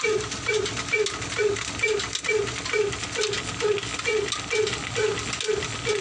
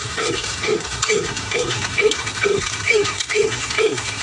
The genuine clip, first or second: first